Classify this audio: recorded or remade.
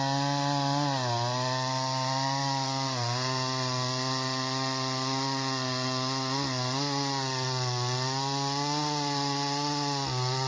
recorded